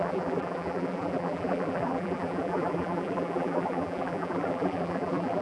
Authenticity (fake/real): fake